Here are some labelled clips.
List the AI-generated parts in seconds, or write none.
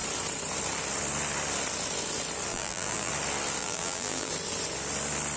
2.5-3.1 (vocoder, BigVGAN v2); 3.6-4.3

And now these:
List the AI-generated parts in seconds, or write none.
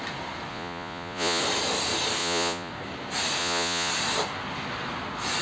0.5-1.4 (vocoder, Vocos); 2.2-2.7; 3.4-3.9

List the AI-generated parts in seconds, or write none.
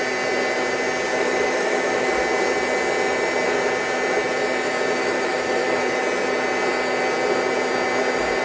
1.1-2.2 (autoencoder, DAC-VAE); 5.0-5.8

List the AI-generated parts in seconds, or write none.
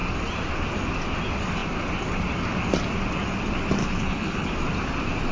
3.8-4.5 (codec, HILCodec)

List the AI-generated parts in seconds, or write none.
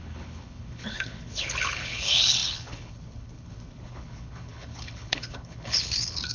0.0-6.3 (codec, HILCodec)